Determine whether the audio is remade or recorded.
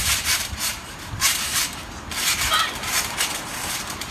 remade